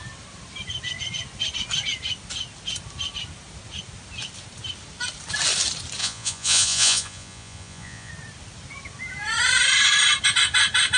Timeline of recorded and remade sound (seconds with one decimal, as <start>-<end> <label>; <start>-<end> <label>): 0.0-6.0 recorded; 6.0-8.1 remade; 8.1-11.0 recorded